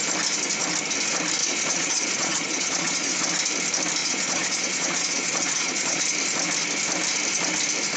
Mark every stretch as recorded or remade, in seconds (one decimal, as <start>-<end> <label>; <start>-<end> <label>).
0.0-1.4 recorded; 1.4-3.2 remade; 3.2-4.0 recorded; 4.0-6.0 remade; 6.0-8.0 recorded